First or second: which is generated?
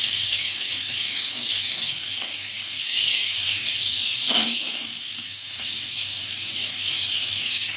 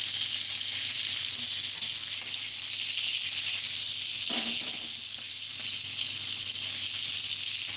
first